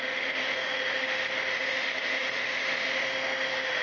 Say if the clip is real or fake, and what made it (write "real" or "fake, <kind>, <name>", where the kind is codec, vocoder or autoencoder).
fake, autoencoder, DAC-VAE